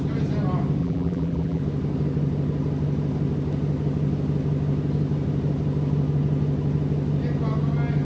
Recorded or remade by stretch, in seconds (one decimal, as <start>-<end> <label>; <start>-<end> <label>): 0.0-0.8 recorded; 0.8-1.6 remade; 1.6-8.0 recorded